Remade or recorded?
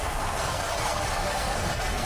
remade